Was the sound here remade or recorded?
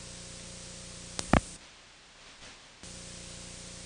recorded